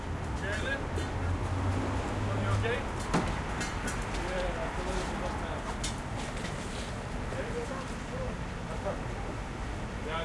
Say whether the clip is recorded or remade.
recorded